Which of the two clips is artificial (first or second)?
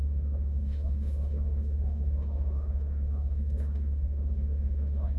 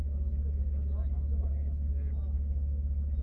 first